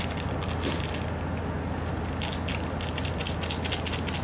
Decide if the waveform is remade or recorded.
recorded